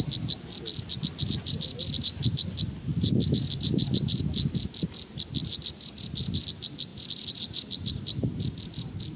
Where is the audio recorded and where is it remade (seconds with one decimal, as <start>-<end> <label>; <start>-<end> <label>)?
0.0-0.9 recorded; 0.9-4.2 remade; 4.2-5.4 recorded; 5.4-6.4 remade; 6.4-6.9 recorded; 6.9-8.2 remade; 8.2-9.2 recorded